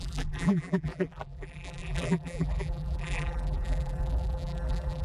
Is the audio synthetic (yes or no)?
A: yes